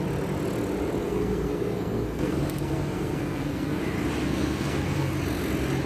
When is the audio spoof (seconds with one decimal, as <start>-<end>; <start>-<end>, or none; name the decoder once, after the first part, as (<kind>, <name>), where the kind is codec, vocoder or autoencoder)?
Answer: 1.0-3.8 (codec, SNAC); 4.2-5.1